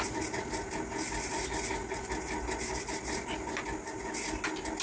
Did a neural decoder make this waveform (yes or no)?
no